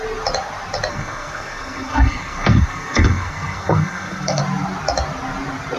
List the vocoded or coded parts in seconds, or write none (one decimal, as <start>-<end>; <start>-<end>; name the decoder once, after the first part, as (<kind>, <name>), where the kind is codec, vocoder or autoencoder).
0.9-4.4 (codec, SNAC)